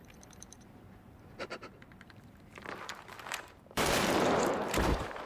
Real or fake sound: fake